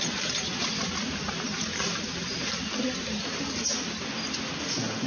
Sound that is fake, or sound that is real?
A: real